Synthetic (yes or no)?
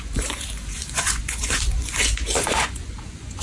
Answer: yes